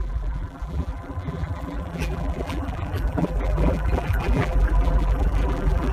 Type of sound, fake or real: fake